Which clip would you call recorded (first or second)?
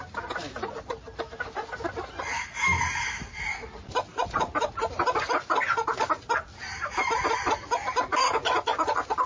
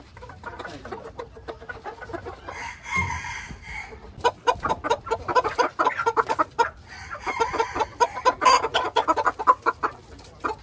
first